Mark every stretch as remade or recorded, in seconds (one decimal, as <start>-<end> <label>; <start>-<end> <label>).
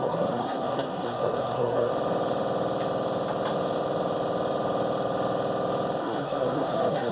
0.0-1.9 remade; 1.9-6.0 recorded; 6.0-7.1 remade